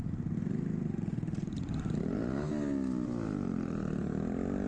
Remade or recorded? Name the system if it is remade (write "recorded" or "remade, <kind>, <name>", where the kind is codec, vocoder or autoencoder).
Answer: recorded